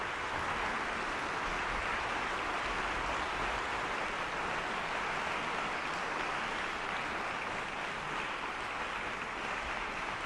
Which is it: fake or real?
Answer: real